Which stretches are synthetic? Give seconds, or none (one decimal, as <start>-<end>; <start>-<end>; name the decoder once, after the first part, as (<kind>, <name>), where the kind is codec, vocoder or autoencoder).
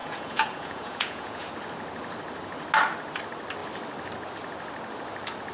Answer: 0.0-1.5 (vocoder, Vocos)